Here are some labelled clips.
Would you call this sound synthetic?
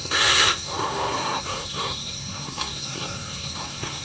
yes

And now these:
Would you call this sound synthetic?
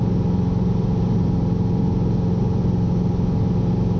no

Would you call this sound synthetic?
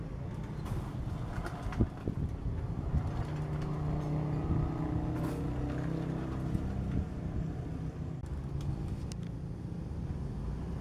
no